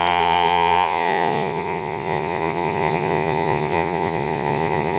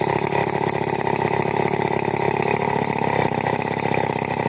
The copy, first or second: first